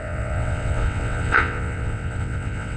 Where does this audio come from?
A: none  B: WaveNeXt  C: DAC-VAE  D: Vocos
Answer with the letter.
B